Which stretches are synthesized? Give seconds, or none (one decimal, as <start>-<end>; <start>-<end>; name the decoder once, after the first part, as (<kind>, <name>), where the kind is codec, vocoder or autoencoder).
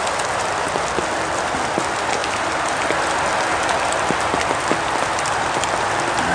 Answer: none